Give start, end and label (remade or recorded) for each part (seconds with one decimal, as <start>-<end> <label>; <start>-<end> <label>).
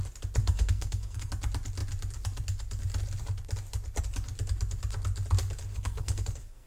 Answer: 0.0-0.4 recorded; 0.4-1.3 remade; 1.3-5.7 recorded; 5.7-6.7 remade